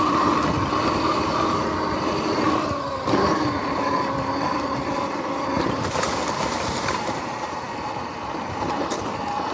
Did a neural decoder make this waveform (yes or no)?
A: no